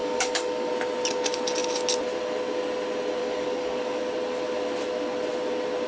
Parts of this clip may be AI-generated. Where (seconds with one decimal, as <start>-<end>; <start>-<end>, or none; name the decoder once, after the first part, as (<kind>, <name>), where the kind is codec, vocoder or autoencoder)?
0.0-0.7 (codec, DAC); 3.2-4.0